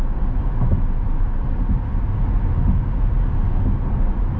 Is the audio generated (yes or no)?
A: no